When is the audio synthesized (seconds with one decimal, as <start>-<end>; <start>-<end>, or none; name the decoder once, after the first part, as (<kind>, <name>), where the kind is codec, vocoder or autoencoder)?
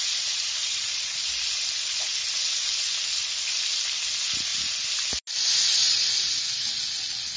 0.6-1.2 (vocoder, Vocos)